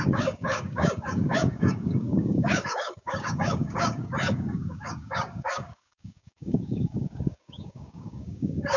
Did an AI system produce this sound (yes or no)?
yes